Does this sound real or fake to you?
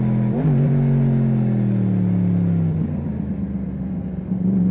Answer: real